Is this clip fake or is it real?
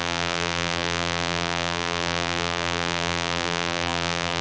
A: fake